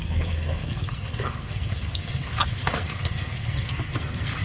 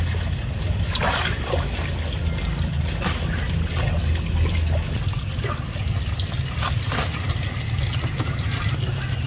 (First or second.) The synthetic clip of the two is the first